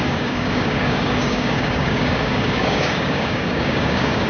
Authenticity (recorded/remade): remade